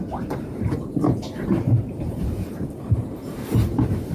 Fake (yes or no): yes